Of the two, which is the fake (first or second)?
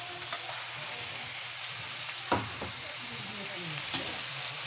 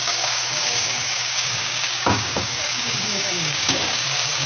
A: second